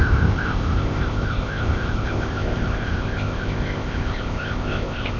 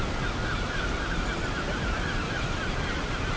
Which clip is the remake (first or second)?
first